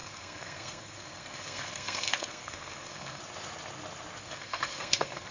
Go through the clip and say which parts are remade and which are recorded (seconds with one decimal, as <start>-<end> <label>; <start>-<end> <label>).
0.0-3.2 remade; 3.2-4.2 recorded; 4.2-5.3 remade